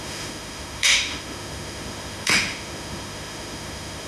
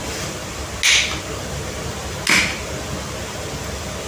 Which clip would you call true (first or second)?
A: second